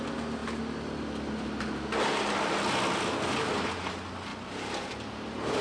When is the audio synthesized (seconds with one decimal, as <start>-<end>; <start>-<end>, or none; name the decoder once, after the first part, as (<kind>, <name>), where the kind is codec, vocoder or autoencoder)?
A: none